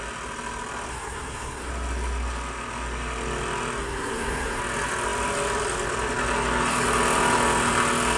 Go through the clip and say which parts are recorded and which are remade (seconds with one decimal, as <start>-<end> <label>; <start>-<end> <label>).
0.0-0.9 recorded; 0.9-1.7 remade; 1.7-3.8 recorded; 3.8-4.6 remade; 4.6-8.2 recorded